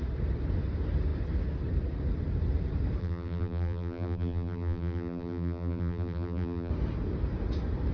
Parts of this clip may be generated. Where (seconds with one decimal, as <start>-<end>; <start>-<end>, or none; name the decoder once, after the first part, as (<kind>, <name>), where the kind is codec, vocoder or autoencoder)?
3.0-6.7 (vocoder, BigVGAN v2)